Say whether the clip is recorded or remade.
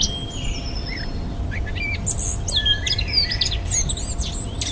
recorded